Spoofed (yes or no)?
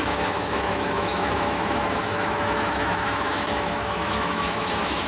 yes